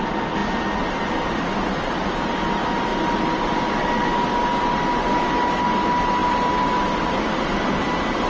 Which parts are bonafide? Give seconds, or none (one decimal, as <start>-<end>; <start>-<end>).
0.0-6.2; 7.3-8.3